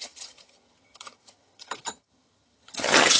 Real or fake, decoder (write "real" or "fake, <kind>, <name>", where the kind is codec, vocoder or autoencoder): fake, vocoder, HiFi-GAN